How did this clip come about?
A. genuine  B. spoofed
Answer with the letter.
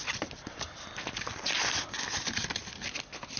A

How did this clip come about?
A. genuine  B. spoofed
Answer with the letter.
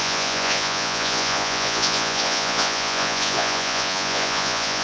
B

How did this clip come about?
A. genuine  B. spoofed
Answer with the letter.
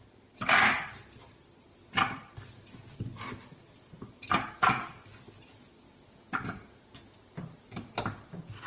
A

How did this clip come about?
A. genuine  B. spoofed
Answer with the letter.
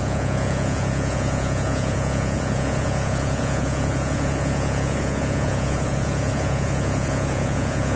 B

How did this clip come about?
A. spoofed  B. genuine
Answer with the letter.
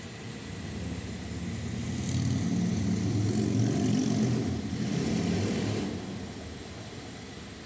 B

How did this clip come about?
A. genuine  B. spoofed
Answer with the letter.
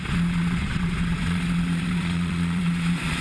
B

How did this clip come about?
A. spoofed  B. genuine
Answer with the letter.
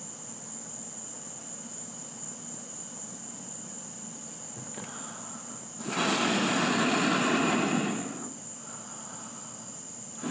B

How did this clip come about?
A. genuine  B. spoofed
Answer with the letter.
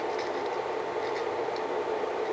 A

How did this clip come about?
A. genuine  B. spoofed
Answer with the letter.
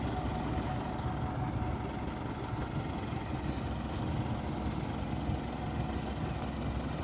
A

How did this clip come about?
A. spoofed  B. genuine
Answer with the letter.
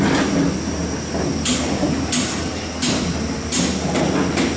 B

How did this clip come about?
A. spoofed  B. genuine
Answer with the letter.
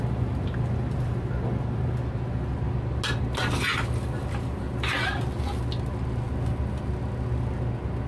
B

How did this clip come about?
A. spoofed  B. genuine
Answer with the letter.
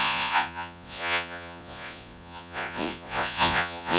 A